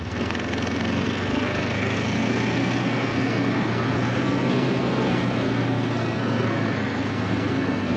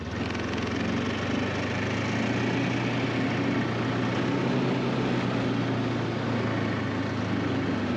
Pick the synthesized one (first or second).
first